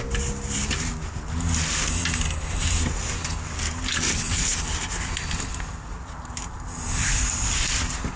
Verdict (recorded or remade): recorded